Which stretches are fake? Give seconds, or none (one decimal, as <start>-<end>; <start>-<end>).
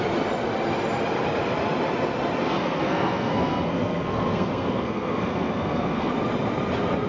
2.4-6.1